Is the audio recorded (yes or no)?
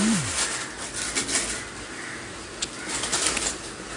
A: yes